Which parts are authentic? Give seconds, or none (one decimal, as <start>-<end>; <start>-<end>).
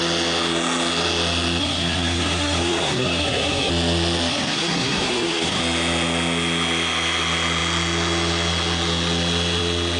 0.0-1.6; 3.7-4.3; 5.6-10.0